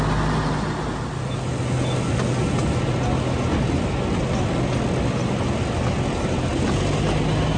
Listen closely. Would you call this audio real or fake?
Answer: real